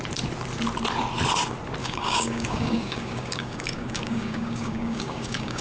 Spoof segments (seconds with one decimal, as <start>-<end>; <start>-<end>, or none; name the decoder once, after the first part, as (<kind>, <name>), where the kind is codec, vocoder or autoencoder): 1.8-5.6 (codec, DAC)